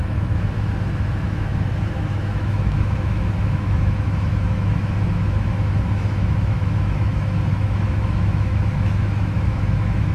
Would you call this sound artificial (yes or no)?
yes